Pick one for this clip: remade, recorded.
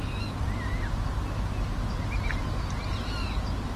recorded